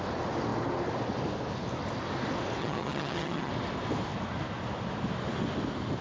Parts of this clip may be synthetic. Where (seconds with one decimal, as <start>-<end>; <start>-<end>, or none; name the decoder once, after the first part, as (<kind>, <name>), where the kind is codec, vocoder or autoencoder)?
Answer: 2.6-3.5 (vocoder, HiFi-GAN)